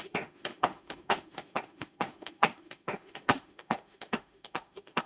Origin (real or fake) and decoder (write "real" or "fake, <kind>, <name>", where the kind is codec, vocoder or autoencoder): fake, autoencoder, DAC-VAE